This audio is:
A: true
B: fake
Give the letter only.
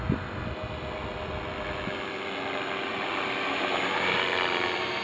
A